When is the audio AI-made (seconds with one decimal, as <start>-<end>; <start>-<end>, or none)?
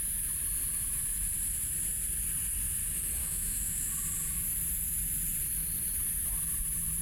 3.2-3.9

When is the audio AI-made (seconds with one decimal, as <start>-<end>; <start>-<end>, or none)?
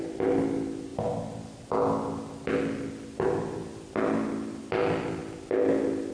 none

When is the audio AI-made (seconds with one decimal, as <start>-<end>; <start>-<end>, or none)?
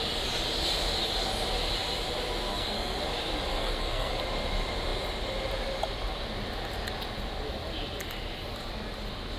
2.5-3.0; 3.5-4.1